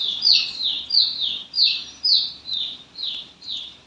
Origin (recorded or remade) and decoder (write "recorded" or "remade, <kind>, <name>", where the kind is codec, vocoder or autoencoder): remade, vocoder, BigVGAN v2